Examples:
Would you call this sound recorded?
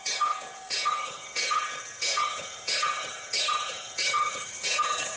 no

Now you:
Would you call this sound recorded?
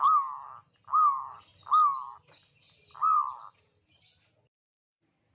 yes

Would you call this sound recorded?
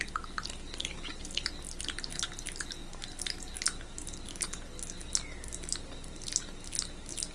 yes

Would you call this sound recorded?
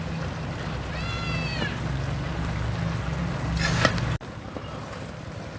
yes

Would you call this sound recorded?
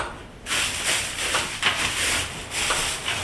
yes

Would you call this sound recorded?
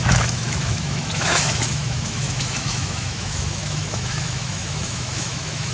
no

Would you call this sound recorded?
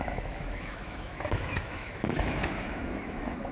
no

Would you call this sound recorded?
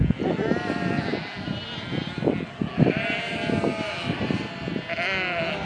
yes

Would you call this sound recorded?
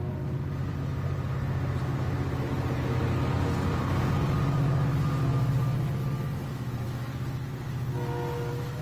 yes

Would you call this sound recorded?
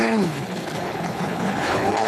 no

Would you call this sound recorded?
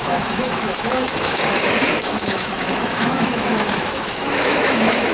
no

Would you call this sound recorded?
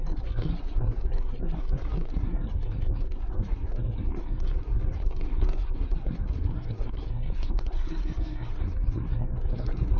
no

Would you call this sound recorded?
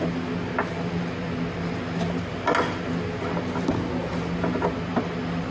yes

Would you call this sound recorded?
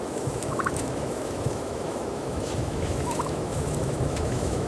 no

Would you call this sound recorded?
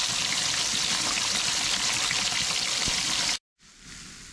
yes